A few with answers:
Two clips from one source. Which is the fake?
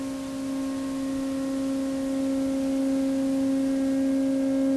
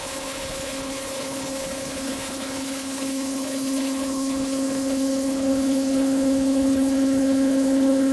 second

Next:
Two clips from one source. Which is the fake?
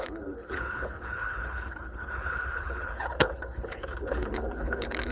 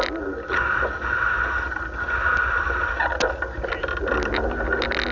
first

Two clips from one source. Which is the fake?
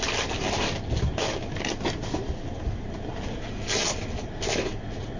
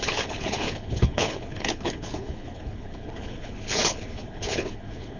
second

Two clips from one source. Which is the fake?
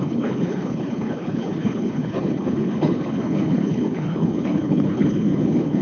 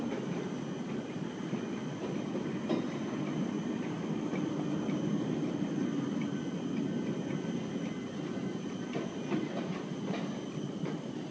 first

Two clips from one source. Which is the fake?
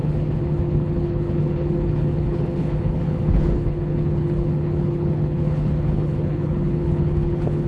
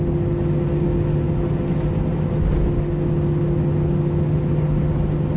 first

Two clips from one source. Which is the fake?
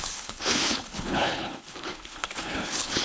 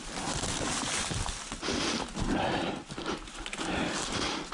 first